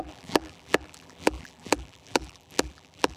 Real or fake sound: fake